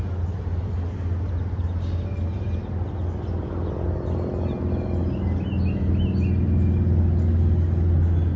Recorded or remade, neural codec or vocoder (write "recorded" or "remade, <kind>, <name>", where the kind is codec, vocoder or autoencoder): recorded